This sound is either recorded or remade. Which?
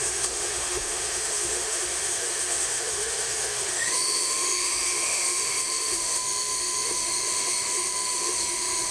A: remade